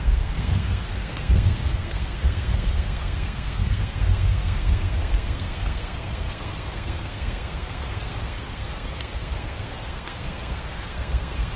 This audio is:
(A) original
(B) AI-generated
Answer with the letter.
B